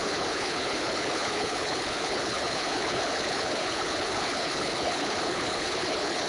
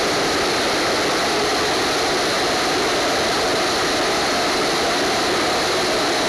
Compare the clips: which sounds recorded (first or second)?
second